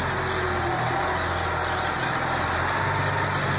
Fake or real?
real